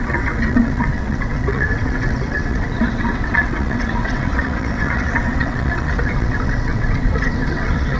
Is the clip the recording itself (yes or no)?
no